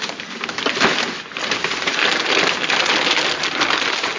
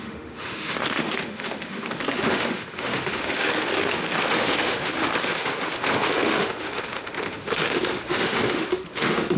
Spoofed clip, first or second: second